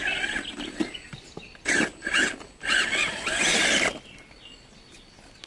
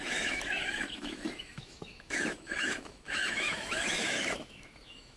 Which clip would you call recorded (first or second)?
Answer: first